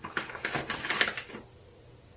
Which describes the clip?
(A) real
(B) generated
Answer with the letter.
A